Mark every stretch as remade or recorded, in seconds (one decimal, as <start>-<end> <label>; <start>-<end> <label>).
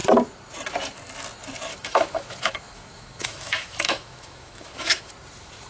0.0-1.7 recorded; 1.7-5.1 remade; 5.1-5.7 recorded